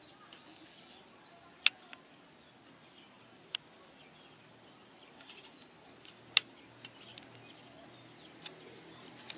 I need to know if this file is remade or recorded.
recorded